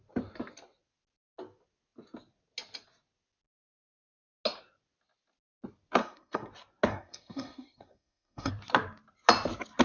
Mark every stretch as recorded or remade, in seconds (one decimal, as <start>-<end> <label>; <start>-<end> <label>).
0.0-6.0 recorded; 6.0-6.5 remade; 6.5-6.9 recorded; 6.9-8.5 remade; 8.5-9.8 recorded